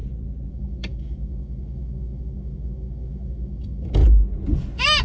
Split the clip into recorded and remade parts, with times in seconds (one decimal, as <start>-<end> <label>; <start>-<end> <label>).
0.0-0.5 recorded; 0.5-4.0 remade; 4.0-5.0 recorded